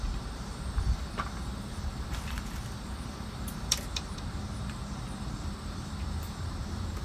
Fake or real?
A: fake